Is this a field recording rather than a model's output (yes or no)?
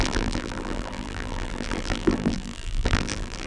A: no